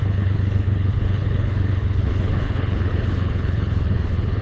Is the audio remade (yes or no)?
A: yes